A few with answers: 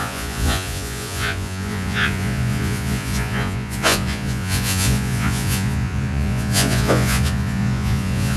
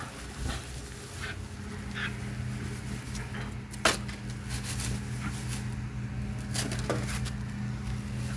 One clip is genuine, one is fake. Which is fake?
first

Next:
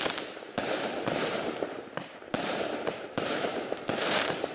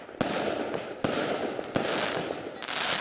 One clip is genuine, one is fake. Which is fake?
first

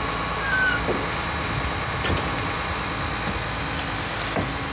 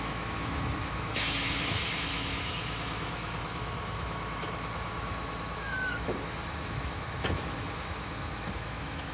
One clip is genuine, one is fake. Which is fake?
second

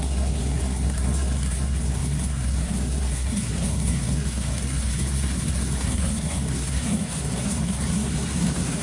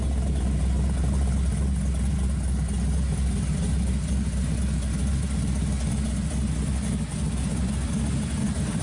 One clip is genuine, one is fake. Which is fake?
first